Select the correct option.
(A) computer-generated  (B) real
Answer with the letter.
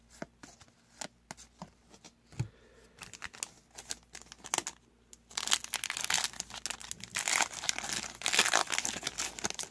B